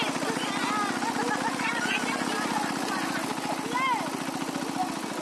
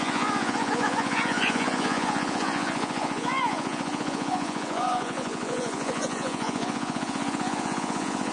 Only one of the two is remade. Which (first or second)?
second